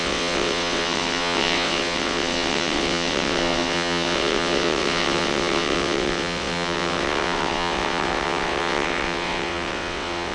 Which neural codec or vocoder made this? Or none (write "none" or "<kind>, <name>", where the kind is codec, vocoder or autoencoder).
vocoder, WaveNeXt